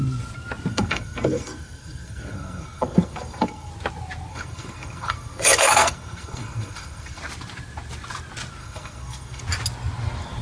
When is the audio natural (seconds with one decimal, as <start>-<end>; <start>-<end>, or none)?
0.0-0.7; 3.7-4.3; 7.2-8.6; 9.4-10.4